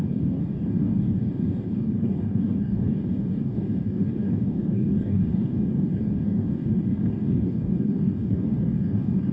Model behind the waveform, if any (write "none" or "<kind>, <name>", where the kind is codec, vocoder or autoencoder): codec, DAC